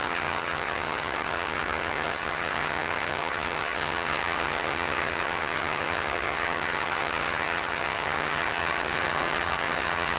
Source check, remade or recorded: remade